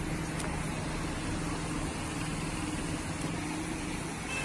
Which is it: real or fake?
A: real